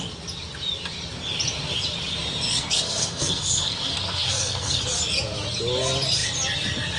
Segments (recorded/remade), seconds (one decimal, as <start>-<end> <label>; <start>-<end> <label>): 0.0-2.5 recorded; 2.5-4.8 remade; 4.8-7.0 recorded